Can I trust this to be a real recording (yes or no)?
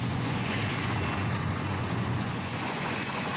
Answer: no